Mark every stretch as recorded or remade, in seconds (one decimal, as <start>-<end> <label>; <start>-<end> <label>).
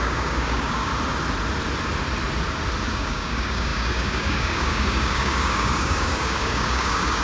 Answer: 0.0-0.9 remade; 0.9-2.9 recorded; 2.9-7.2 remade